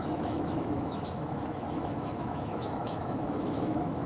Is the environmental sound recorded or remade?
remade